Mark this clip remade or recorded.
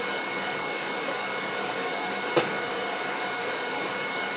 remade